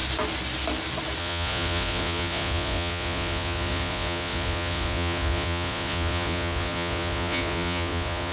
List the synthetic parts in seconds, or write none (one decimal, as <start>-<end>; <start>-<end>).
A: 1.2-8.3